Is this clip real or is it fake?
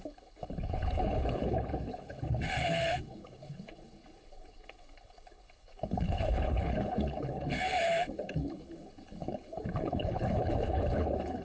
fake